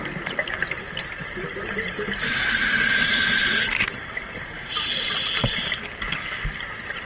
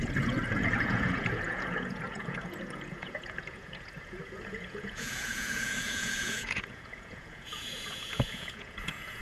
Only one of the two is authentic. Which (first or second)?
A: first